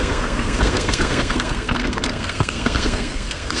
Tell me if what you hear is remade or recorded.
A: remade